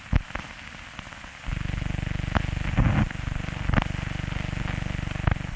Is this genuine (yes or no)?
yes